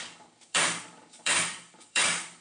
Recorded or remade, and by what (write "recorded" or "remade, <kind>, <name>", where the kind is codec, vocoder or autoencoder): remade, codec, DAC